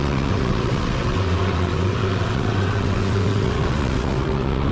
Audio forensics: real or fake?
fake